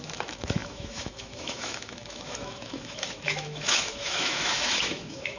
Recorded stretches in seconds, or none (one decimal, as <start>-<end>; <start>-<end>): none